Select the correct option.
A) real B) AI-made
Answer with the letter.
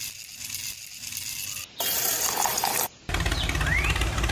A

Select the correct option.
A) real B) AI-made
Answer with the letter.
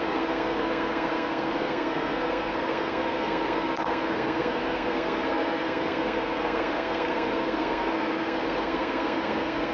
B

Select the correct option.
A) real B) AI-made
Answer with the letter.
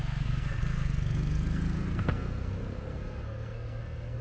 B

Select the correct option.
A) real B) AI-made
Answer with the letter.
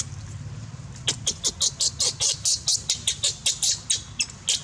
A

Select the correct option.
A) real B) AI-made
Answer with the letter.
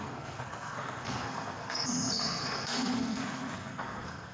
B